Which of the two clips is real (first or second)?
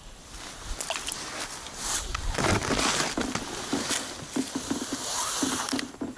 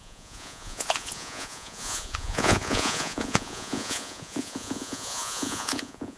first